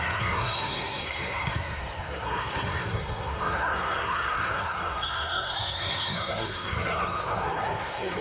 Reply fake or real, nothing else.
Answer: fake